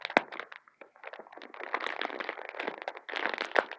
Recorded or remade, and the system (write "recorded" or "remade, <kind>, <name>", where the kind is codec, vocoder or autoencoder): recorded